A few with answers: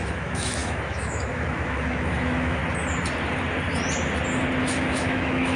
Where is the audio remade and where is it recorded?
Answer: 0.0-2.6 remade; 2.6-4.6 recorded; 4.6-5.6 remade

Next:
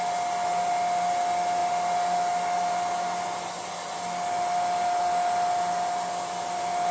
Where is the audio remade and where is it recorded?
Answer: 0.0-6.9 recorded

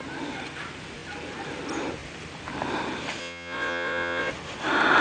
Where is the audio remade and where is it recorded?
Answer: 0.0-3.2 recorded; 3.2-4.3 remade; 4.3-5.0 recorded

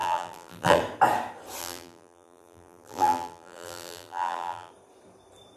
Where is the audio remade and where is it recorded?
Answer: 0.0-0.8 remade; 0.8-1.6 recorded; 1.6-4.7 remade; 4.7-5.6 recorded

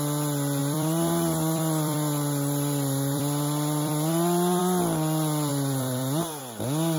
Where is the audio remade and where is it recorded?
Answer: 0.0-0.6 recorded; 0.6-4.6 remade; 4.6-5.5 recorded; 5.5-6.4 remade; 6.4-7.0 recorded

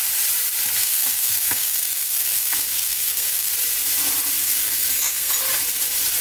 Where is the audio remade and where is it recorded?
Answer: 0.0-0.8 recorded; 0.8-3.5 remade; 3.5-4.4 recorded; 4.4-5.3 remade; 5.3-6.2 recorded